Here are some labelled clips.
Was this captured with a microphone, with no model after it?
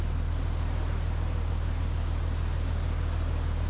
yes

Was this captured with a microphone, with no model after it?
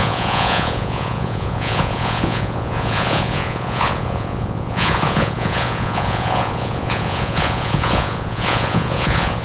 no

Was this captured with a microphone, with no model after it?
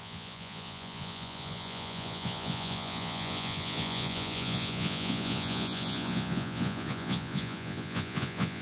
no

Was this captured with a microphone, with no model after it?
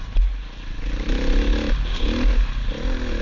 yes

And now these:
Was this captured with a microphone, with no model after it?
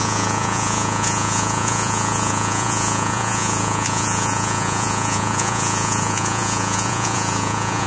no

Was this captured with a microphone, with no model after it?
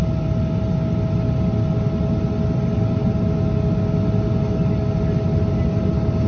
yes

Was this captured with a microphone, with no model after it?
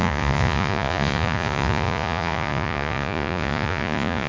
no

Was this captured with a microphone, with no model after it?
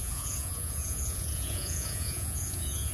no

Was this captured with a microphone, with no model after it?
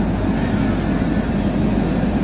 yes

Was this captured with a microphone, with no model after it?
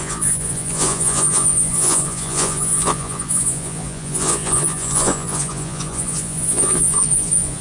no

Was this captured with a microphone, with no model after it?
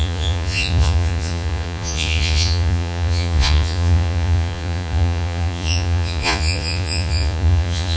no